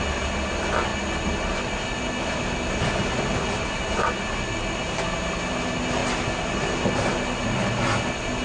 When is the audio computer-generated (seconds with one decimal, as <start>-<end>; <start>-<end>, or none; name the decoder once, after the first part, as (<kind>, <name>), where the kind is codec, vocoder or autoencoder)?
none